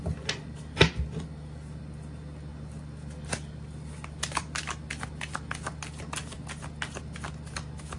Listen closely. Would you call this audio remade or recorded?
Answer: recorded